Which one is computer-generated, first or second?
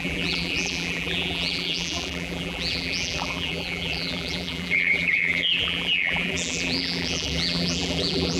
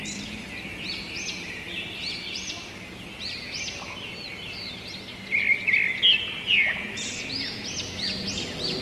first